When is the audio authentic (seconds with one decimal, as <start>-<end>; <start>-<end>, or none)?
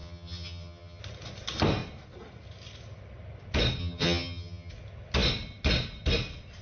1.0-3.8; 4.7-6.6